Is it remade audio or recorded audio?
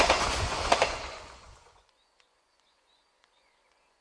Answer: remade